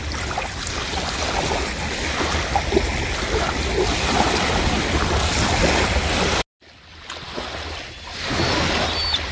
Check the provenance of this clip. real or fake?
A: real